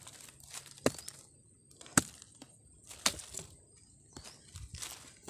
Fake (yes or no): no